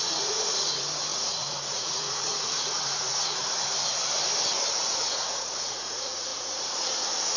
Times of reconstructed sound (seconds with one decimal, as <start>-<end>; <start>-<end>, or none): 0.0-3.4; 4.9-7.4